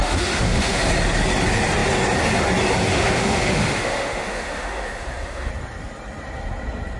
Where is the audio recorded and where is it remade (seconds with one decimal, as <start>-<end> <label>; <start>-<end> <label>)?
0.0-0.8 remade; 0.8-2.9 recorded; 2.9-5.5 remade; 5.5-7.0 recorded